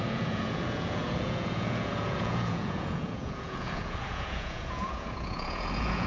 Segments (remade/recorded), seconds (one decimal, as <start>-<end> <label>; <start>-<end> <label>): 0.0-6.1 remade

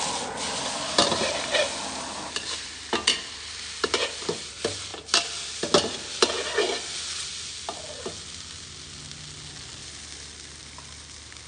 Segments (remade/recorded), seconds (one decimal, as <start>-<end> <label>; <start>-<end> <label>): 0.0-11.5 recorded

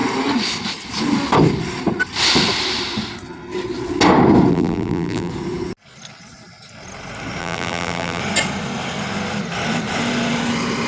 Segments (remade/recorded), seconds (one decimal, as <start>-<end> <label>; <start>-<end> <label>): 0.0-4.5 recorded; 4.5-5.3 remade; 5.3-7.4 recorded; 7.4-8.2 remade; 8.2-10.9 recorded